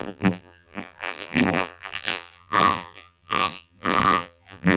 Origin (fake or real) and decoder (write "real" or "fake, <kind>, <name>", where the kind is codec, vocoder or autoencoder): fake, vocoder, BigVGAN v2